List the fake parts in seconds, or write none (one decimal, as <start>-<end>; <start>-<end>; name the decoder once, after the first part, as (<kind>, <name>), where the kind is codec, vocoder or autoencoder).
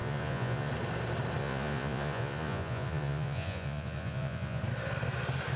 0.0-0.7 (vocoder, Vocos); 1.4-4.6